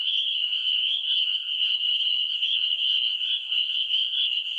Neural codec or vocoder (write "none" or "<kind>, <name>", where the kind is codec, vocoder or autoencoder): codec, SNAC